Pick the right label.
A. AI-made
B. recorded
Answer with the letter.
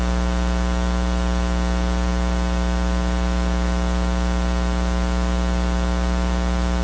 B